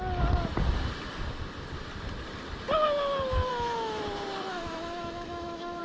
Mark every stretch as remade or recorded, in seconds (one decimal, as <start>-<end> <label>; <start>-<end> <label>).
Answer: 0.0-3.5 recorded; 3.5-4.0 remade; 4.0-4.5 recorded; 4.5-5.8 remade

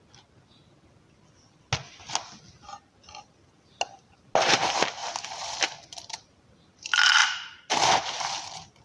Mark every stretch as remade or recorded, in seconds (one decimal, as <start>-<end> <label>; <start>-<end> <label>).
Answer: 0.0-5.0 recorded; 5.0-6.2 remade; 6.2-8.8 recorded